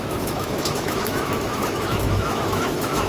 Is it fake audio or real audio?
fake